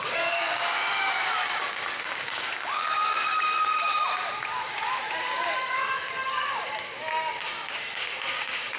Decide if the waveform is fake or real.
fake